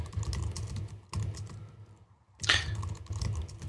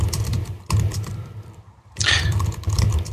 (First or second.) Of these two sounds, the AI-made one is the second